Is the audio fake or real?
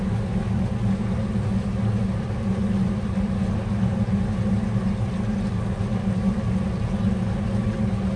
real